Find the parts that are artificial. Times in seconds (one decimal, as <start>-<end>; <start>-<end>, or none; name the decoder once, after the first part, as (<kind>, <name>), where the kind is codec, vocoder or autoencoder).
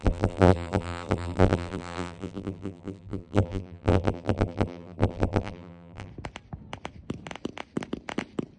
0.0-6.1 (vocoder, BigVGAN v2)